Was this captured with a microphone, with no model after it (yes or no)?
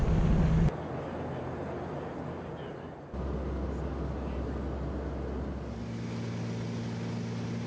yes